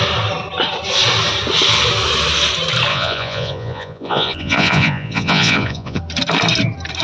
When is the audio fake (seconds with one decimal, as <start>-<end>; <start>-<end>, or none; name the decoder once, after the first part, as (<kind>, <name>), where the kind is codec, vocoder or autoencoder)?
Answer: 2.9-6.0 (vocoder, Vocos)